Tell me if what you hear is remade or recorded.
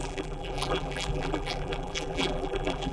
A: remade